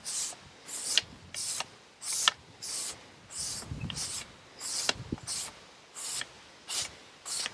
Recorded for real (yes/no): yes